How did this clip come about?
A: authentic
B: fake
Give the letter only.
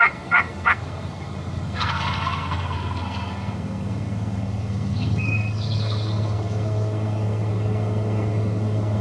B